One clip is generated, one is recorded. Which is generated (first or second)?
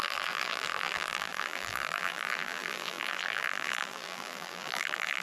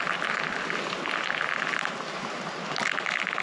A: first